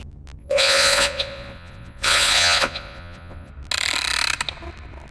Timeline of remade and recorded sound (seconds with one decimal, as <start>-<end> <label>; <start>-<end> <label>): 0.0-0.4 recorded; 0.4-3.5 remade; 3.5-5.1 recorded